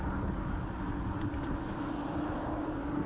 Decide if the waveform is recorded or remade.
recorded